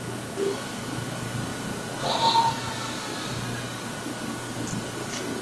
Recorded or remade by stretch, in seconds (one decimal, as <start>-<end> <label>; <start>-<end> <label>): 0.0-5.4 recorded